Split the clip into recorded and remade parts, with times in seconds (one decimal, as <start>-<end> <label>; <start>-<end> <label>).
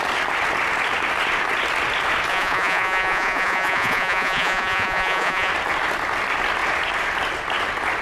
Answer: 0.0-2.3 recorded; 2.3-5.5 remade; 5.5-8.0 recorded